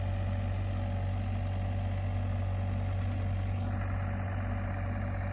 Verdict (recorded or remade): recorded